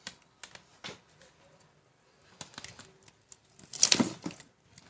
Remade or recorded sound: recorded